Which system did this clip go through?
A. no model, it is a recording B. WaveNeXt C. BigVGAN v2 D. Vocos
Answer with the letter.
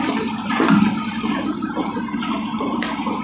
A